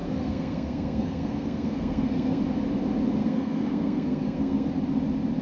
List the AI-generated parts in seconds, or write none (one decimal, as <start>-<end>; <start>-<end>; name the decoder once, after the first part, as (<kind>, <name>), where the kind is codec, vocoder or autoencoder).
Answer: 0.0-2.4 (codec, SNAC); 3.2-4.7